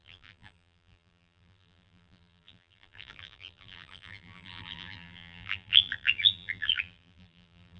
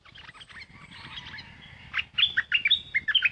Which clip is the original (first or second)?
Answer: second